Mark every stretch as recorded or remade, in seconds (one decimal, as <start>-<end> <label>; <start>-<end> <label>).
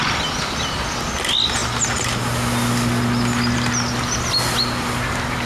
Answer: 0.0-5.5 recorded